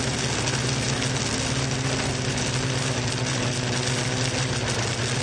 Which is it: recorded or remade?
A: recorded